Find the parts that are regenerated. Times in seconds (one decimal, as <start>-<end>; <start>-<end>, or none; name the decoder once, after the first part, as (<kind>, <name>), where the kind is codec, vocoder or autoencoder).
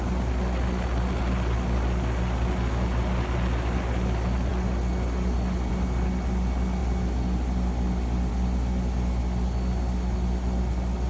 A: none